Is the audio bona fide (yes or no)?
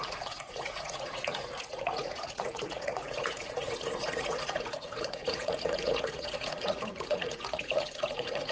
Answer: no